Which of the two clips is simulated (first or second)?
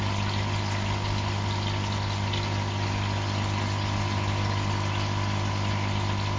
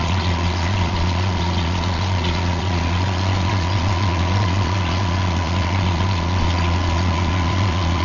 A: second